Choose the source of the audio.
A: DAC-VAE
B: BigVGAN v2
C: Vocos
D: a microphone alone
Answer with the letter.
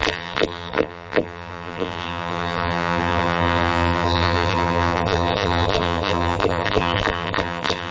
B